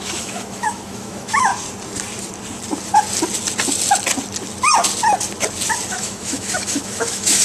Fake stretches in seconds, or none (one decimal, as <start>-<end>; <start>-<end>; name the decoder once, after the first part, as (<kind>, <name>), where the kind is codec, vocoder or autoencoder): 0.0-1.5 (autoencoder, DAC-VAE); 5.9-7.4